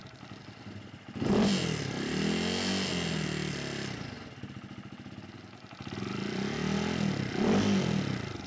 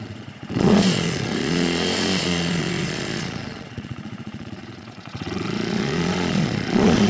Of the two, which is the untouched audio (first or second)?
first